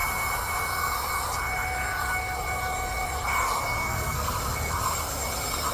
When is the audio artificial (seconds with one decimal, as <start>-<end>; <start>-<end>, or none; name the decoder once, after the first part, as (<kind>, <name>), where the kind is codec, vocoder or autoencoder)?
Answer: 3.8-4.3 (codec, SNAC)